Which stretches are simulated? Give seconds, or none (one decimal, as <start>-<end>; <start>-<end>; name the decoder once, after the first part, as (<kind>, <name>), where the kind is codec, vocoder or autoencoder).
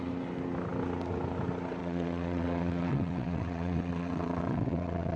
1.8-5.2 (vocoder, WaveNeXt)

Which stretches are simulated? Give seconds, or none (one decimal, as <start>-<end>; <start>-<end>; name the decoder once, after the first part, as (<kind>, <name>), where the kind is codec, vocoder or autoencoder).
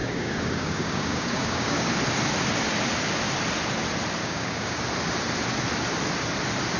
0.0-1.9 (codec, DAC); 4.2-4.8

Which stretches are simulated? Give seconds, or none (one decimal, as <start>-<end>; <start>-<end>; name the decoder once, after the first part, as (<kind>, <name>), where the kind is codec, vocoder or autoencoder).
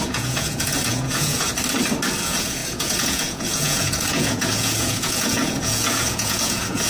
0.0-1.5 (vocoder, Vocos); 2.2-6.9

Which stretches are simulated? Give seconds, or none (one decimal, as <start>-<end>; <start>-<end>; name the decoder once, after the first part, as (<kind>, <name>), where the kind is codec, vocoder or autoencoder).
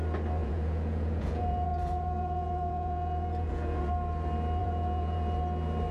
0.4-3.9 (vocoder, Vocos); 4.6-5.4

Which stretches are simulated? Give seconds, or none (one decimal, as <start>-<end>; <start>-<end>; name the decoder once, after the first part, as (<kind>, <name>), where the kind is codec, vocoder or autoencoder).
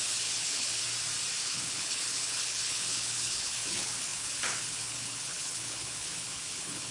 0.0-0.8 (codec, HILCodec); 1.4-6.9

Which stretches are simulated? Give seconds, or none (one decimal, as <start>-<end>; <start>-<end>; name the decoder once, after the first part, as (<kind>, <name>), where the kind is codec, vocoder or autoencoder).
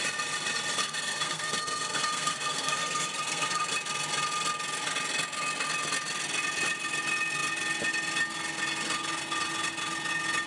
0.8-3.7 (codec, SNAC)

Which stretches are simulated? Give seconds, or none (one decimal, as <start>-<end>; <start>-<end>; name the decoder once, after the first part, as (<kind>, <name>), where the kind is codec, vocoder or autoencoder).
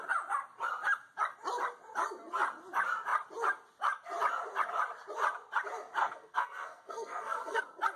6.0-7.6 (codec, SNAC)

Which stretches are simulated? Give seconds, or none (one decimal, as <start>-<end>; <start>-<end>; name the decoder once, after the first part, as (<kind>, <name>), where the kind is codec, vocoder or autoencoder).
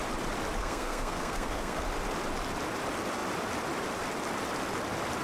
0.6-1.8 (codec, SNAC)